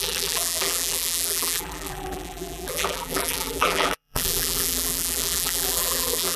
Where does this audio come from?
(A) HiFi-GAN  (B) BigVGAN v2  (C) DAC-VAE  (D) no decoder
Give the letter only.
B